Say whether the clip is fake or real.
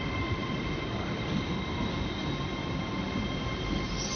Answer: real